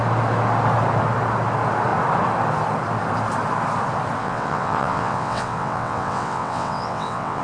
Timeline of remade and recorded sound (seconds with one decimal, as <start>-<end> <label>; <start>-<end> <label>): 0.0-4.2 recorded; 4.2-7.4 remade